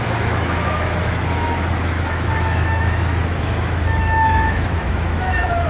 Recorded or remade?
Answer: remade